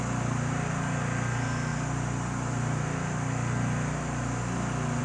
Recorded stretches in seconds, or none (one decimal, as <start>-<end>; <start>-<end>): 0.0-5.0